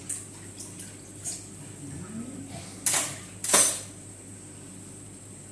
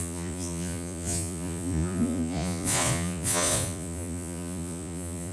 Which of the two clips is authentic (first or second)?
first